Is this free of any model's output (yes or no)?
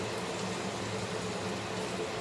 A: yes